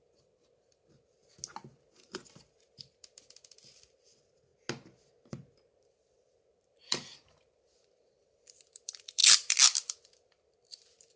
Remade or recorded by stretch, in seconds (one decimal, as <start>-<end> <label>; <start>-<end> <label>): 0.0-1.2 remade; 1.2-2.0 recorded; 2.0-4.5 remade; 4.5-5.3 recorded; 5.3-11.2 remade